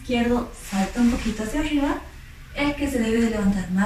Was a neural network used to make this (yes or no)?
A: yes